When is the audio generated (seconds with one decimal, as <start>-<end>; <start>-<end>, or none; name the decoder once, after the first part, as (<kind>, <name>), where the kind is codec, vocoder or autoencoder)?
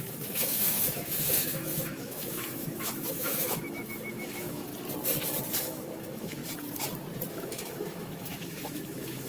0.0-4.7 (autoencoder, DAC-VAE); 5.6-6.4; 7.3-9.3